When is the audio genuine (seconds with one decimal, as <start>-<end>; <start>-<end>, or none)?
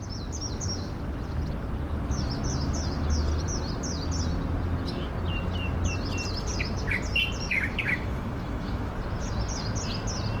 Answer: 0.0-7.5; 8.9-10.4